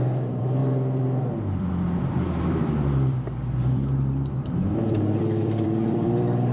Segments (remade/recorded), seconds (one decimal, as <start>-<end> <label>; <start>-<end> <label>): 0.0-6.5 remade